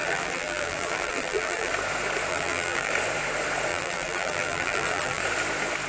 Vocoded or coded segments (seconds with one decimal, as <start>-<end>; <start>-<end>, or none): 0.0-1.7; 2.3-2.9; 3.7-5.2